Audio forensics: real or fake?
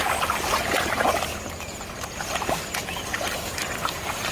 real